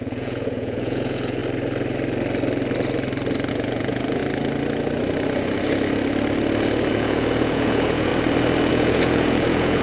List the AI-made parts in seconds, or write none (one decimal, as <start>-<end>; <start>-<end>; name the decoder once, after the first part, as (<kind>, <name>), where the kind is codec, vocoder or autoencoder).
0.0-1.4 (vocoder, Vocos); 3.5-4.2; 6.9-8.1; 8.7-9.8